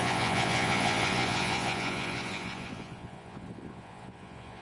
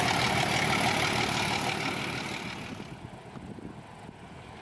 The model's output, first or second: first